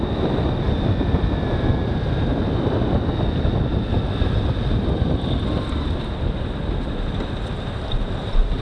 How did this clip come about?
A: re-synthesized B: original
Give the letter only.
B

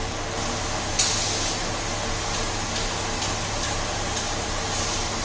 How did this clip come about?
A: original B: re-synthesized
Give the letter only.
A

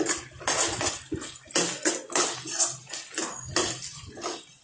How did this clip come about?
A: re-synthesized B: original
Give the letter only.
B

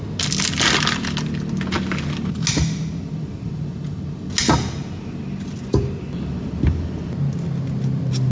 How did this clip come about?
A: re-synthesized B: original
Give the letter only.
B